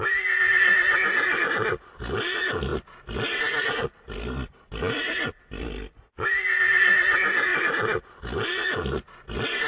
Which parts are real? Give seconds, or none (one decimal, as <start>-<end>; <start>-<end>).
0.0-9.7